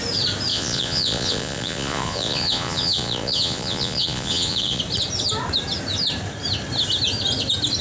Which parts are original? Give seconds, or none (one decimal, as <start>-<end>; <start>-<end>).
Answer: 0.0-0.5; 4.8-7.8